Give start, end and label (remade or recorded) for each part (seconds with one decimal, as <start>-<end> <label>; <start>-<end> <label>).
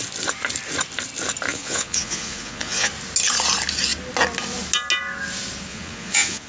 0.0-1.5 recorded; 1.5-2.9 remade; 2.9-5.7 recorded; 5.7-6.5 remade